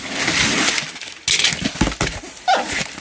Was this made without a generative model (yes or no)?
yes